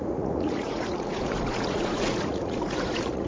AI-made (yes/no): yes